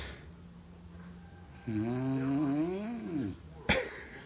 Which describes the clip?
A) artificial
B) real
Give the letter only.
B